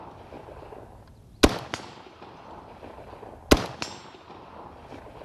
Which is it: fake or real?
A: real